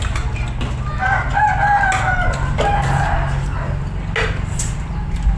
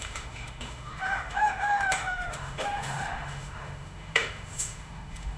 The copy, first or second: second